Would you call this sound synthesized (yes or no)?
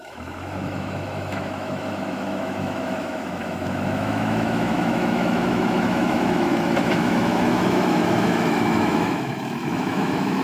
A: yes